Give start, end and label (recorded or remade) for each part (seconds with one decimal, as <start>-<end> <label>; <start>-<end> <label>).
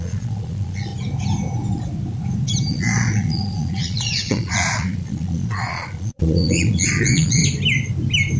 0.0-0.9 remade; 0.9-2.7 recorded; 2.7-7.4 remade; 7.4-8.4 recorded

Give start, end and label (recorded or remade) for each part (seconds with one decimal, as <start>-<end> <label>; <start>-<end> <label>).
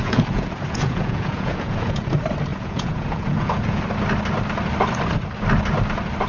0.0-2.1 remade; 2.1-2.5 recorded; 2.5-3.8 remade; 3.8-6.3 recorded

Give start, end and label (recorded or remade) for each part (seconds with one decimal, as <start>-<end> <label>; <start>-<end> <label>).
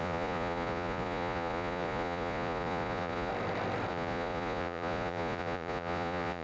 0.0-3.3 remade; 3.3-3.9 recorded; 3.9-6.4 remade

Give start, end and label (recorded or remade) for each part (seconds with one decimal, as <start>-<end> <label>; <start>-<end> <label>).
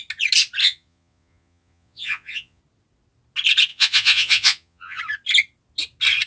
0.0-0.6 recorded; 0.6-2.6 remade; 2.6-3.7 recorded; 3.7-5.0 remade; 5.0-6.3 recorded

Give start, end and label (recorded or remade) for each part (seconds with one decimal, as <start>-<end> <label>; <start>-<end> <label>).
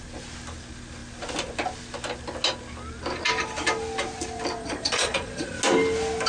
0.0-4.6 recorded; 4.6-5.6 remade; 5.6-6.3 recorded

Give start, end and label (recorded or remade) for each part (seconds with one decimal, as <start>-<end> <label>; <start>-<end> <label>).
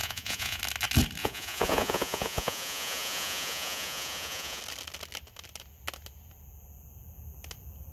0.0-0.6 remade; 0.6-1.2 recorded; 1.2-4.6 remade; 4.6-7.9 recorded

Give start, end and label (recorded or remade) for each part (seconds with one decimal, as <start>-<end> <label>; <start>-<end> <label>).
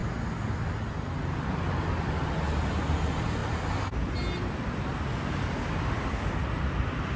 0.0-7.2 recorded